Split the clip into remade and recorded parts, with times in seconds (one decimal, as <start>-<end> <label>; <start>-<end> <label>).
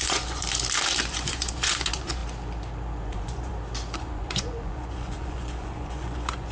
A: 0.0-0.4 remade; 0.4-1.1 recorded; 1.1-2.2 remade; 2.2-3.0 recorded; 3.0-3.5 remade; 3.5-4.0 recorded; 4.0-6.5 remade